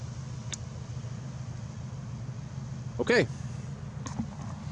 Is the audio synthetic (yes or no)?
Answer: no